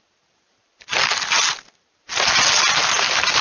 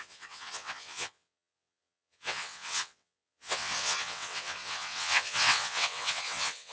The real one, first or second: first